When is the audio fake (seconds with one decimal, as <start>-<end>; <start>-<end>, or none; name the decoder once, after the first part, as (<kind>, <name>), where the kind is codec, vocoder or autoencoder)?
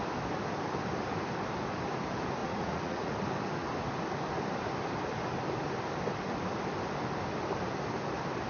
2.4-3.1 (vocoder, Vocos)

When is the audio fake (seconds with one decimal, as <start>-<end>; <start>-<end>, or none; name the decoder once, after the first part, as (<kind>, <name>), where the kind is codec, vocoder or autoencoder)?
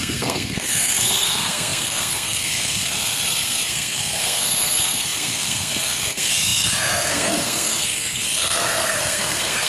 0.0-9.7 (codec, SNAC)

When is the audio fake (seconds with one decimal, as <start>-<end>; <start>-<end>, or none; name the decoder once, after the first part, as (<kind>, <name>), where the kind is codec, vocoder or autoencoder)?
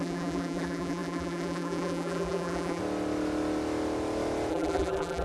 0.0-2.8 (vocoder, BigVGAN v2); 4.5-5.2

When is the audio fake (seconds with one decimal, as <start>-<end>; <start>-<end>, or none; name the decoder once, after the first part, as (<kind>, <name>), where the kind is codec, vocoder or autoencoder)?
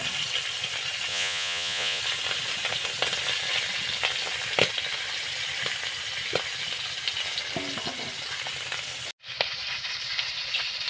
1.1-2.0 (vocoder, Vocos)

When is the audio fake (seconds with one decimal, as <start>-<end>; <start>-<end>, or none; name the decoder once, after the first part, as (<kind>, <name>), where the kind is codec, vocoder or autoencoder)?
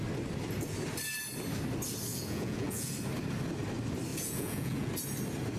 2.1-2.9 (vocoder, Vocos); 4.1-4.9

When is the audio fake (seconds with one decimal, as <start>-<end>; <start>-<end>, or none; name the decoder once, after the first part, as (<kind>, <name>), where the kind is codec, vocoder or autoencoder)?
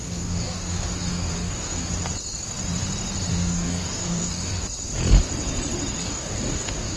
0.0-1.9 (codec, DAC); 3.3-4.6; 6.0-7.0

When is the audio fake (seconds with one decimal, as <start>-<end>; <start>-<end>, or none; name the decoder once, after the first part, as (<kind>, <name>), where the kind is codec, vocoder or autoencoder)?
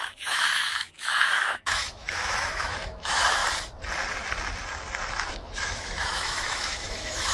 0.0-3.4 (autoencoder, DAC-VAE); 5.3-7.3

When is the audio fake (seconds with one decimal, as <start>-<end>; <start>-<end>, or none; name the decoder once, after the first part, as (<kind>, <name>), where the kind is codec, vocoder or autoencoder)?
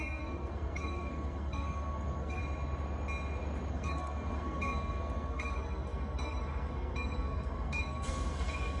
0.0-2.4 (codec, SNAC); 3.7-8.8